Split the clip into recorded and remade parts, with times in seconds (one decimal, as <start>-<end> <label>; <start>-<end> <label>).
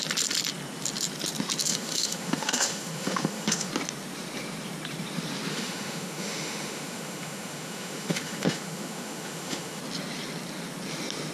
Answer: 0.0-1.7 recorded; 1.7-3.7 remade; 3.7-5.5 recorded; 5.5-9.8 remade; 9.8-11.3 recorded